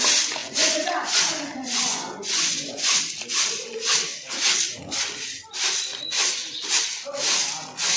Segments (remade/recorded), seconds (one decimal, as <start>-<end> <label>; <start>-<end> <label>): 0.0-0.4 recorded; 0.4-3.0 remade; 3.0-8.0 recorded